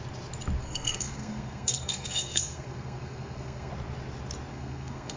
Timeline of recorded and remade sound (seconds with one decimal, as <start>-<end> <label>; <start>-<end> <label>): 0.0-0.6 recorded; 0.6-3.7 remade; 3.7-4.5 recorded; 4.5-5.2 remade